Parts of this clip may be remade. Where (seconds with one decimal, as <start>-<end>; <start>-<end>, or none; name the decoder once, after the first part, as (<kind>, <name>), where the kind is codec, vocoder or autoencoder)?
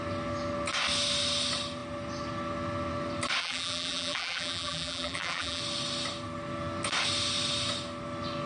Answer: 3.4-5.6 (vocoder, BigVGAN v2)